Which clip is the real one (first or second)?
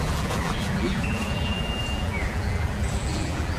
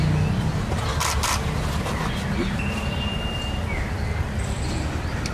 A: second